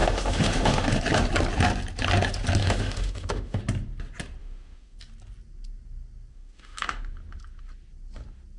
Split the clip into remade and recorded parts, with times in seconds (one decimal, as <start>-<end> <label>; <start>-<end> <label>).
0.0-1.0 remade; 1.0-2.6 recorded; 2.6-3.6 remade; 3.6-4.4 recorded; 4.4-5.0 remade; 5.0-6.3 recorded; 6.3-7.0 remade; 7.0-8.6 recorded